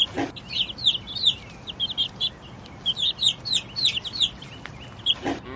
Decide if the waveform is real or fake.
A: real